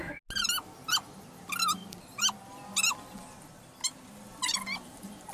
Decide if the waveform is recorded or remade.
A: recorded